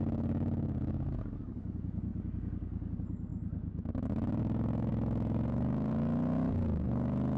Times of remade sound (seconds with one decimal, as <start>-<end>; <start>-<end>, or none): 0.0-7.4